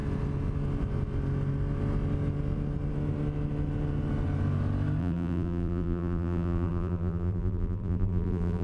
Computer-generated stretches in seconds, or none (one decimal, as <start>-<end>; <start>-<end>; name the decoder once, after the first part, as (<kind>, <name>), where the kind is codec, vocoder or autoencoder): 5.0-8.6 (vocoder, BigVGAN v2)